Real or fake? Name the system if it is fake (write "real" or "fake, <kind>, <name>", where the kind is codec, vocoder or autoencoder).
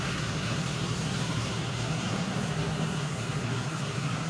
fake, codec, SNAC